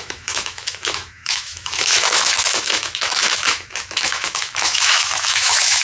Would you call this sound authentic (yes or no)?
no